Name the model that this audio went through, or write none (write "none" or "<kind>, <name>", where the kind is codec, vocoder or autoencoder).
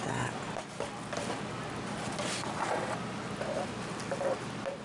none